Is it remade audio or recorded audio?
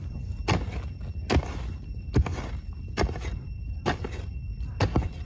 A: recorded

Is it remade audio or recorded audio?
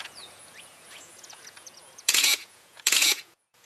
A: remade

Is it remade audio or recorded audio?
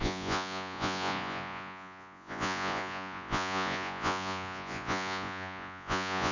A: remade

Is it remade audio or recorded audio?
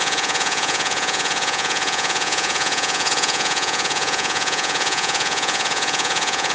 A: remade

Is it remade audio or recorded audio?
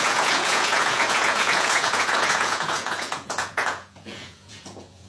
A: remade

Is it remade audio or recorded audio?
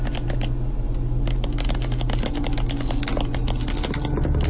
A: recorded